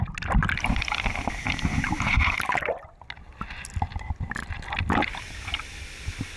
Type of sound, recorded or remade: recorded